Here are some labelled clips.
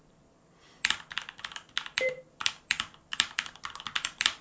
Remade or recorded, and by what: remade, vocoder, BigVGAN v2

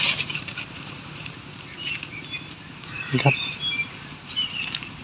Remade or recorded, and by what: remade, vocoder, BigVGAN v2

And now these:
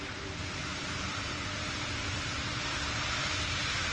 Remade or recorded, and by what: remade, vocoder, BigVGAN v2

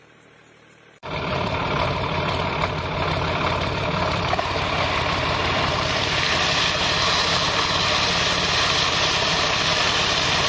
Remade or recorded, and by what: remade, vocoder, BigVGAN v2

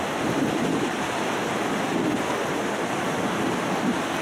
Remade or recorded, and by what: recorded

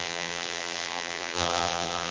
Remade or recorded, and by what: remade, vocoder, BigVGAN v2